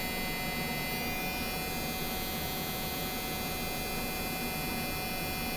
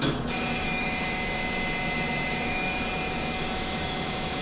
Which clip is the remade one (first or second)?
second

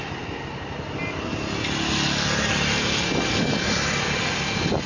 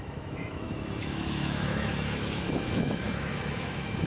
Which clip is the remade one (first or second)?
second